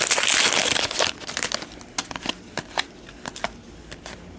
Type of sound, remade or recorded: recorded